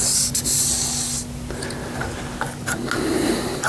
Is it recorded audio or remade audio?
recorded